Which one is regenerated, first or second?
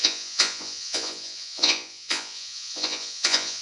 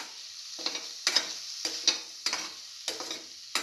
first